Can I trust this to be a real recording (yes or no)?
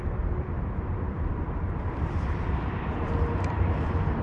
no